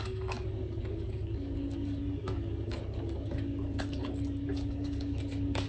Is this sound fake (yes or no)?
yes